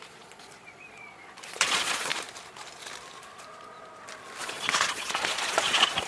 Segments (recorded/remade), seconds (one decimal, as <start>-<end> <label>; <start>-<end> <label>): 0.0-2.1 remade; 2.1-4.4 recorded; 4.4-6.1 remade